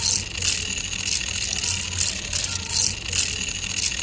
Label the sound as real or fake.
real